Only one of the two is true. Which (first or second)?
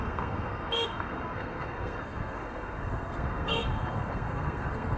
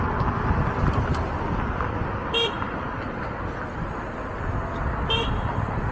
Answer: second